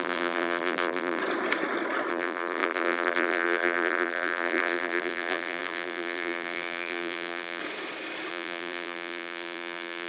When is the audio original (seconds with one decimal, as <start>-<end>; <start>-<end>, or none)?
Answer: 1.2-2.1; 7.6-8.3